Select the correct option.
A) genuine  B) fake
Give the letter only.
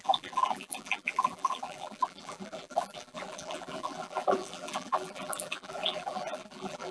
B